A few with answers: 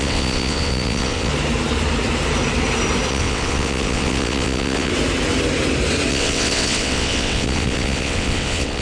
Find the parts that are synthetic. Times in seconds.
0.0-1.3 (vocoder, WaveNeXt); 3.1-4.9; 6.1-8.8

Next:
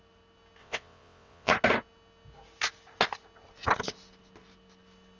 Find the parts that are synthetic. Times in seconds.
0.6-1.5 (vocoder, WaveNeXt)

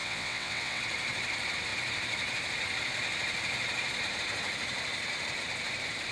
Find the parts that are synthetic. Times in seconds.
0.0-0.8 (vocoder, WaveNeXt)